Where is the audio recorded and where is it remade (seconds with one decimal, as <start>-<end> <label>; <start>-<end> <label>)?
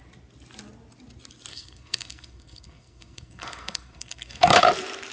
0.0-1.5 recorded; 1.5-4.6 remade; 4.6-5.1 recorded